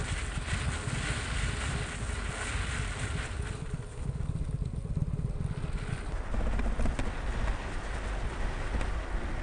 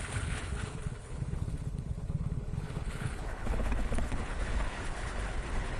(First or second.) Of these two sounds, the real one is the first